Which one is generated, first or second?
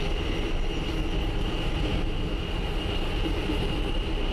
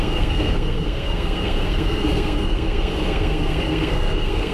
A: second